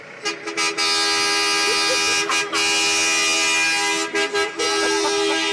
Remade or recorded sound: recorded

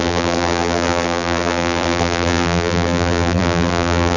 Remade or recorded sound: remade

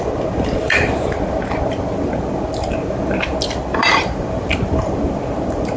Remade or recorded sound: remade